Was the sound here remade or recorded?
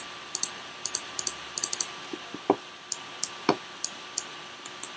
recorded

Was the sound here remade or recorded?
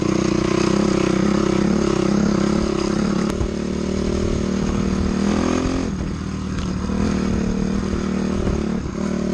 recorded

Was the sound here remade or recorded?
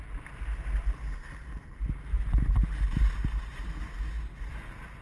recorded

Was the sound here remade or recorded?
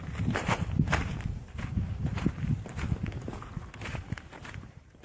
remade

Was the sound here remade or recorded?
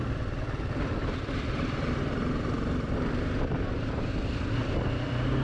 remade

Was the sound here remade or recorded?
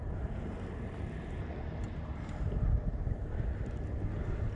recorded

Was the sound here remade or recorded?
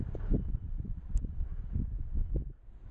recorded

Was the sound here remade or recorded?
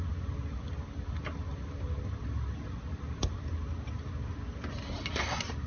recorded